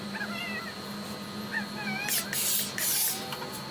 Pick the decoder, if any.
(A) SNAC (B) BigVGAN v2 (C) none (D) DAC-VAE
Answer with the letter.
C